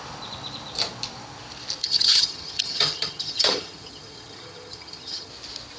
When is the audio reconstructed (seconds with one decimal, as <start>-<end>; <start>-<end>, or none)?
1.8-5.3